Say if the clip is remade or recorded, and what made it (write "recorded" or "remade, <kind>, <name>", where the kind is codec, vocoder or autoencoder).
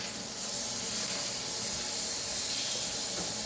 recorded